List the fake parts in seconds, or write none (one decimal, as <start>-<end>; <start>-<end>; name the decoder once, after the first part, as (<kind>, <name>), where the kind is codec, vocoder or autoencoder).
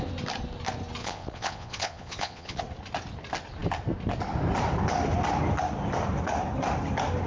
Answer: 1.0-2.6 (vocoder, Vocos)